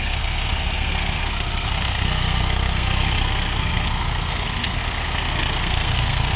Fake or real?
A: fake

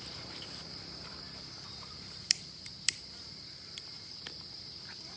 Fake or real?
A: fake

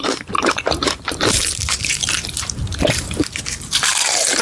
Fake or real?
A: fake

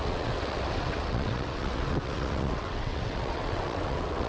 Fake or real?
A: fake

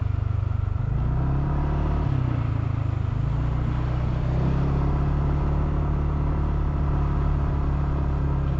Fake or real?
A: real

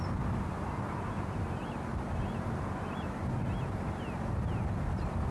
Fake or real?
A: real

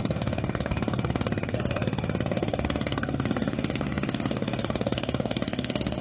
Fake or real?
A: fake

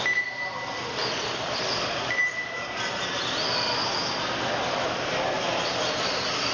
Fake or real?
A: real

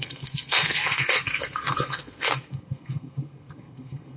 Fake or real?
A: fake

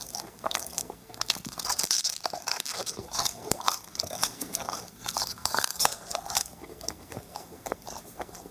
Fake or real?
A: fake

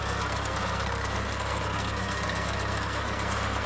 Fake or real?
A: fake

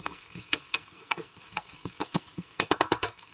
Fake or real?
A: fake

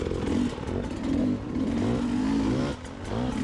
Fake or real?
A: real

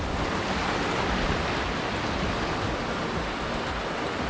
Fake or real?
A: real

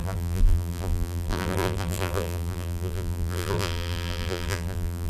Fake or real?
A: fake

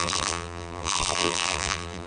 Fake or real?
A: fake